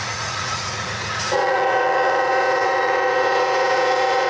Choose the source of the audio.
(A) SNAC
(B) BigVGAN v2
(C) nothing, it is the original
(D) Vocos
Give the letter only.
D